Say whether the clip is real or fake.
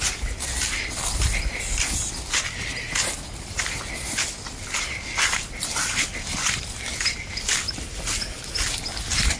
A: real